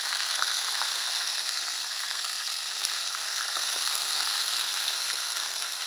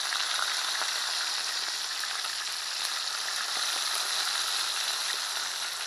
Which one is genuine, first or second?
second